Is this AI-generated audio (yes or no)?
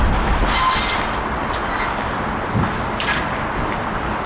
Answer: no